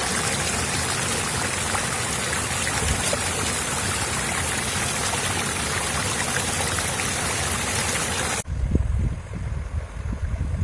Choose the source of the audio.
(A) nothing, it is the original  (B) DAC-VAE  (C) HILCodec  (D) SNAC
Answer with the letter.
A